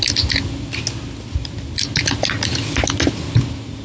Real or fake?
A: real